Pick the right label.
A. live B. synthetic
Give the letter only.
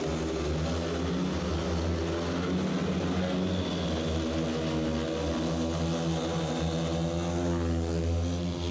A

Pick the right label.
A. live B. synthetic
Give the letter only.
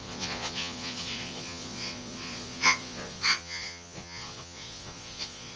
B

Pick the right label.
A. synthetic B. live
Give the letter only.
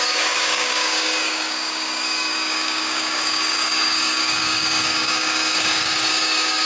A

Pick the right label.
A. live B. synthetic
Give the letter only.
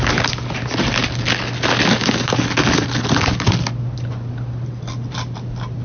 A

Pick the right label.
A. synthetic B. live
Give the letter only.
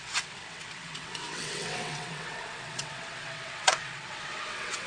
A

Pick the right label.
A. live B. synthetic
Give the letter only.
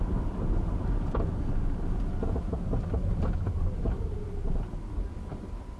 A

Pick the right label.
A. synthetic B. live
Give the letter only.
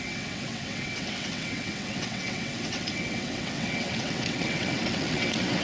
A